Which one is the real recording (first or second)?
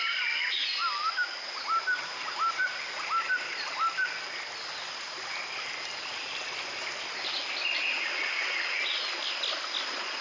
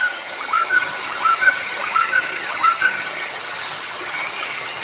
first